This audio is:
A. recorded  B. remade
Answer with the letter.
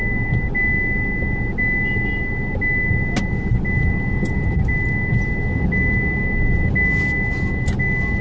A